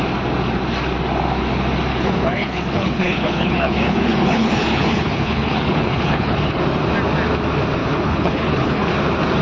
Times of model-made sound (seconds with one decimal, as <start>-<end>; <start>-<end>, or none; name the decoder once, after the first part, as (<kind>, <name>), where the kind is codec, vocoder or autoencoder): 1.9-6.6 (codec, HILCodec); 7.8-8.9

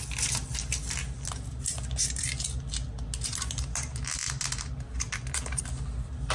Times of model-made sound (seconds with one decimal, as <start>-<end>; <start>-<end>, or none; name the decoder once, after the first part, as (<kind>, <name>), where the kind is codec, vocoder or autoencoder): none

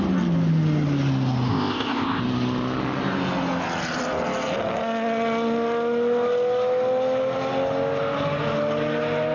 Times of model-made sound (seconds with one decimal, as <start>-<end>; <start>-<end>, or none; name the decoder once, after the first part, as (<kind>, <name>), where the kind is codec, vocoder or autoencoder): 1.5-2.2 (codec, ZipCodec)

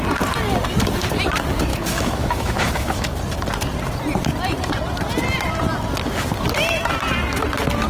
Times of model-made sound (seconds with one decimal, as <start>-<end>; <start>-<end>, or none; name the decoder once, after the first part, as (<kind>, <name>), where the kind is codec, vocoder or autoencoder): 1.7-3.2 (autoencoder, DAC-VAE)

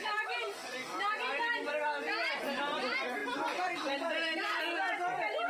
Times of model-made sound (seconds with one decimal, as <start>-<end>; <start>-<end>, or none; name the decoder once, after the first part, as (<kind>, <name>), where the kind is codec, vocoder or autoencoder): 3.2-4.6 (vocoder, BigVGAN v2)

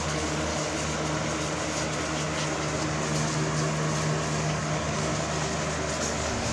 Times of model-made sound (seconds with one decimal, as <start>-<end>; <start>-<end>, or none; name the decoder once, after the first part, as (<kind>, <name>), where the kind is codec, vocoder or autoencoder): 0.0-0.5 (codec, DAC); 4.4-5.1; 6.0-6.5

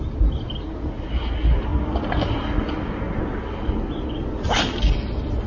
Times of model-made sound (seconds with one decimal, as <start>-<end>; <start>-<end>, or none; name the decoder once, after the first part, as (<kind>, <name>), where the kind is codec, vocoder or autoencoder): none

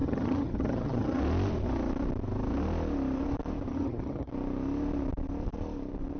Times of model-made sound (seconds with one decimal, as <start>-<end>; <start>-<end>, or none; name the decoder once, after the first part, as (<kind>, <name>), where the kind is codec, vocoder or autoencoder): 0.0-1.2 (vocoder, HiFi-GAN); 3.7-4.3